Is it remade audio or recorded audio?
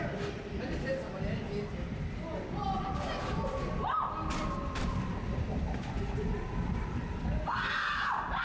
recorded